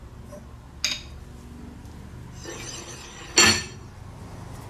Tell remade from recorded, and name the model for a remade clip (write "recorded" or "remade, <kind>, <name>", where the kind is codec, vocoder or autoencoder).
recorded